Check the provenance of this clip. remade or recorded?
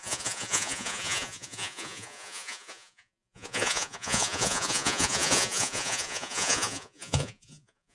remade